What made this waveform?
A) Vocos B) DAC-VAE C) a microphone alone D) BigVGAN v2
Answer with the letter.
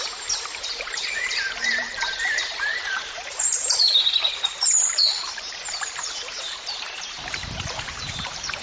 D